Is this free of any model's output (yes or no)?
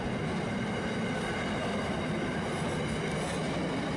yes